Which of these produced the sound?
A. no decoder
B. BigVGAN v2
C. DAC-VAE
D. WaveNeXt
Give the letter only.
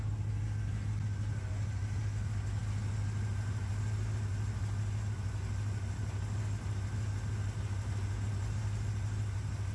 A